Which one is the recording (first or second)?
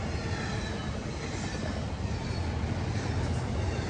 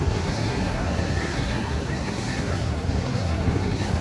first